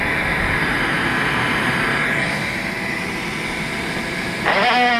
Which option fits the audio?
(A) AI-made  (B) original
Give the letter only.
B